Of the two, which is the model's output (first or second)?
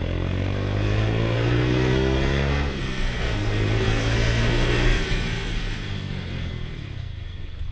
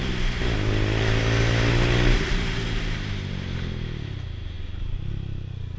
first